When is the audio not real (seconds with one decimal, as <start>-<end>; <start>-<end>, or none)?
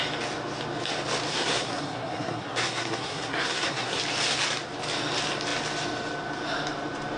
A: 1.3-4.0